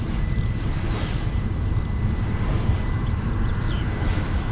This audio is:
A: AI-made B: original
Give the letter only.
A